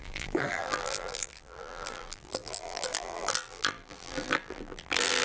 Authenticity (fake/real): fake